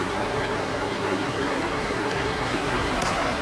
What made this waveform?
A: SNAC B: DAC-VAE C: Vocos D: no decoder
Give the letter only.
A